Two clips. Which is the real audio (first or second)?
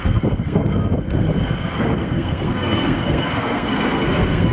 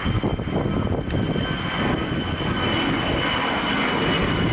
second